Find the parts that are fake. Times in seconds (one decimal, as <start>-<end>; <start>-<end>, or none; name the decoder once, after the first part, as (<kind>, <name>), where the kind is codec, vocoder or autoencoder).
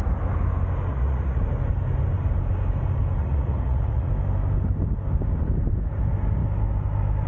0.9-1.4 (vocoder, Vocos); 3.2-4.1